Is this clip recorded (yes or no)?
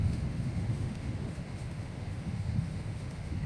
no